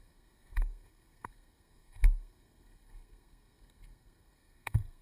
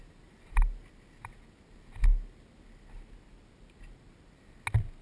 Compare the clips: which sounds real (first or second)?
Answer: second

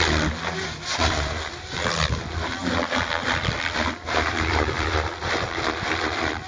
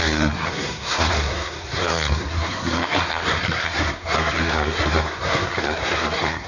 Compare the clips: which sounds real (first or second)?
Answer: first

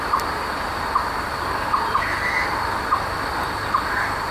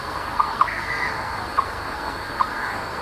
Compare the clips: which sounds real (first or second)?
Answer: first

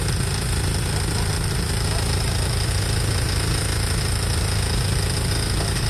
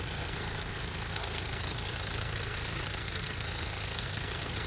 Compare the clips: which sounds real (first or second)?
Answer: first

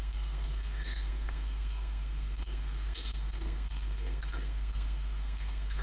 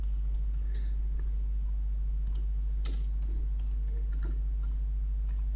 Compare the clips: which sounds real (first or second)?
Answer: second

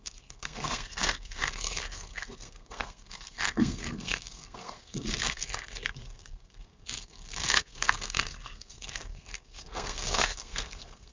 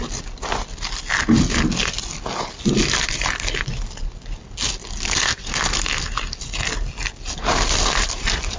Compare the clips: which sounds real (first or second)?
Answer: second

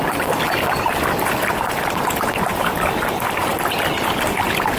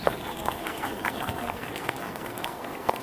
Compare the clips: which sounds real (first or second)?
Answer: first